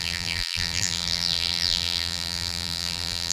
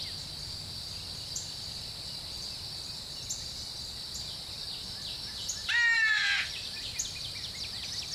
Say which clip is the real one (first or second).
second